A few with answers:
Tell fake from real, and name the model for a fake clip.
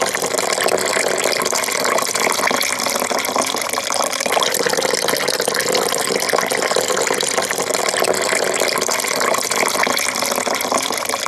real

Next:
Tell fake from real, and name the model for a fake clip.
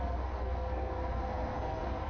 fake, codec, SNAC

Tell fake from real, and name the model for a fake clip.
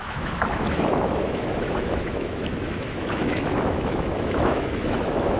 fake, autoencoder, DAC-VAE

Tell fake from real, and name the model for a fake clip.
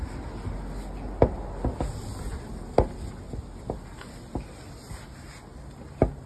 real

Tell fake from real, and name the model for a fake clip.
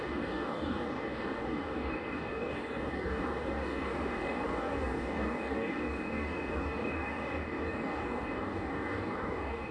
fake, codec, DAC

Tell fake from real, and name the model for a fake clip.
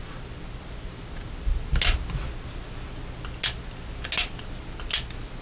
real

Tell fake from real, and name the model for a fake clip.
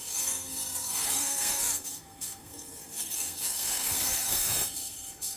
fake, codec, SNAC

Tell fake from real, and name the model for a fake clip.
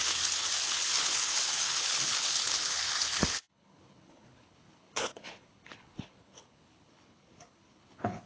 fake, codec, HILCodec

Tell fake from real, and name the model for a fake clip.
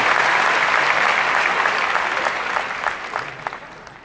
real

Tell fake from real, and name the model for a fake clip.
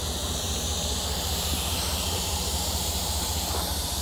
fake, vocoder, BigVGAN v2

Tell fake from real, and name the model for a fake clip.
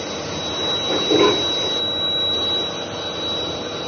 real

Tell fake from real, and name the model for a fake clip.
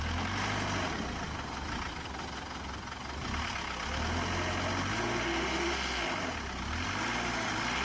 real